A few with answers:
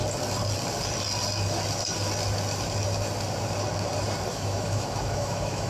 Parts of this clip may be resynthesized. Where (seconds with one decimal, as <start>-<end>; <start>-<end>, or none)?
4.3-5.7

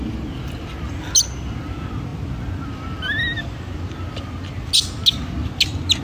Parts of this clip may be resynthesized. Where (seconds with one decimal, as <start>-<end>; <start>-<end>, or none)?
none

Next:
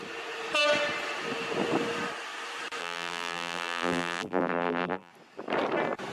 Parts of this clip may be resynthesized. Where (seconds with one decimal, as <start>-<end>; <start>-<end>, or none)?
2.8-5.1

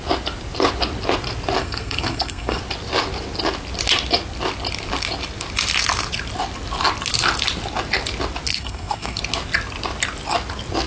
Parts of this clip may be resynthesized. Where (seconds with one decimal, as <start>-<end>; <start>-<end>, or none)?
1.6-2.6; 8.5-9.2

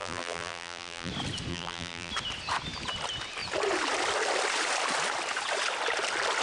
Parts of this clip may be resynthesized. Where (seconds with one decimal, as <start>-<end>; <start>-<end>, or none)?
0.0-1.1; 1.5-2.1